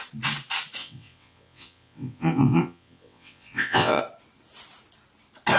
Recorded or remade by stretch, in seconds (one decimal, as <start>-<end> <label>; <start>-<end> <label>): 0.0-0.8 recorded; 0.8-4.0 remade; 4.0-5.6 recorded

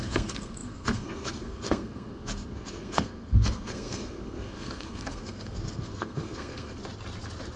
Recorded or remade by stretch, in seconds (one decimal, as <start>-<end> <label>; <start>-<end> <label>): 0.0-6.8 remade; 6.8-7.6 recorded

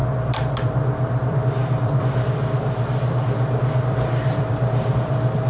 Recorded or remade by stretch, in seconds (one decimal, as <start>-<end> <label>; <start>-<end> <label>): 0.0-0.6 recorded; 0.6-5.5 remade

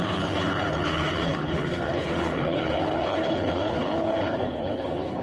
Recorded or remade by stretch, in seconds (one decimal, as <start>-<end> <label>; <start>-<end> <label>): 0.0-5.2 remade

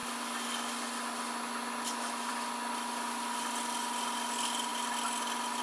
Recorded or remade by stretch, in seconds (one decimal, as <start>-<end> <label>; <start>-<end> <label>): 0.0-5.6 recorded

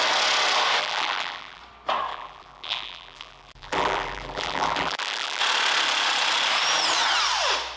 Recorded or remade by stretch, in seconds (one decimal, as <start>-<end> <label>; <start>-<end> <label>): 0.0-0.8 recorded; 0.8-1.6 remade; 1.6-2.1 recorded; 2.1-5.4 remade; 5.4-7.8 recorded